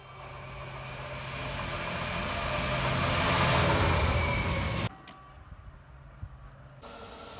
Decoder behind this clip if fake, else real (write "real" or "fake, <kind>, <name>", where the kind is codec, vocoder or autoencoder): real